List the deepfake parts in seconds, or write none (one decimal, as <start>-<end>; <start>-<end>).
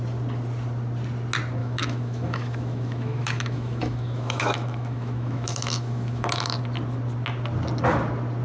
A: 1.6-6.6